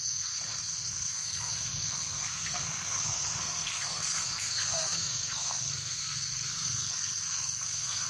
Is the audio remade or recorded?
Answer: remade